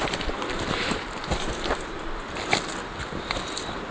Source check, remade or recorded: recorded